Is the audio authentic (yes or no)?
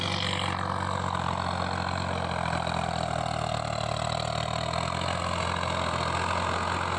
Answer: yes